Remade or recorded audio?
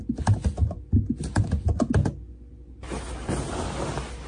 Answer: recorded